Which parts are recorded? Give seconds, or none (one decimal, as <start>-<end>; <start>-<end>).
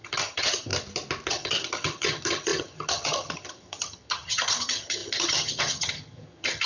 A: 0.7-1.3